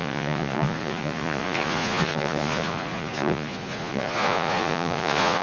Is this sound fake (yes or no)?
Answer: yes